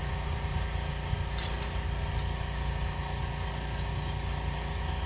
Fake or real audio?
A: real